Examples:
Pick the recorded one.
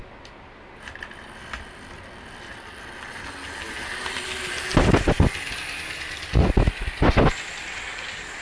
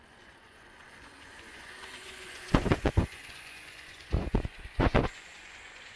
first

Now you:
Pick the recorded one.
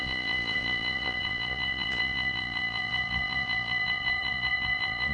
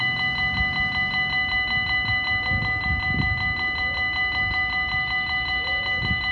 second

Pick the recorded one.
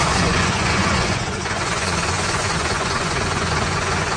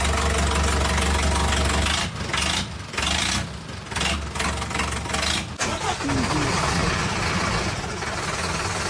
second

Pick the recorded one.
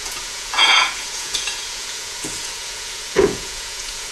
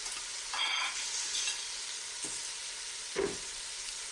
second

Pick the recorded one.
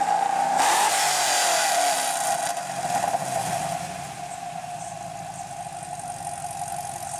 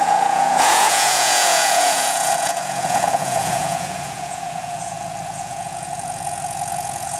first